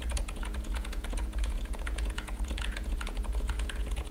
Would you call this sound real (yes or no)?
no